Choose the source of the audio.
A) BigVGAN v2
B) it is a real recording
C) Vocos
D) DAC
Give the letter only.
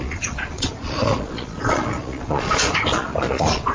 C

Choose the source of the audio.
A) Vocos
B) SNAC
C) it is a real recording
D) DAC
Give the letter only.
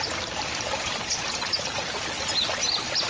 C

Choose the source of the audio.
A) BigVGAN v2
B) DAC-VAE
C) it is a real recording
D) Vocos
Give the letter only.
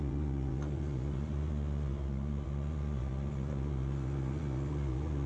D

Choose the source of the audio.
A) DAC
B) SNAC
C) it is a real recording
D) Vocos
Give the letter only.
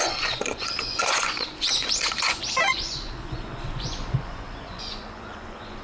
D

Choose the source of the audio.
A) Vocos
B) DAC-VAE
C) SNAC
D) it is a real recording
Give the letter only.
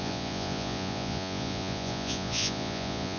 A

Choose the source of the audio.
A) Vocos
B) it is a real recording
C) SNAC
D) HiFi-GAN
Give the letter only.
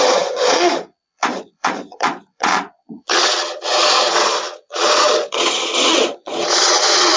A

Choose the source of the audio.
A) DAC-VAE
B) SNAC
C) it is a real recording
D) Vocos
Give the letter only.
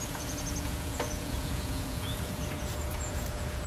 D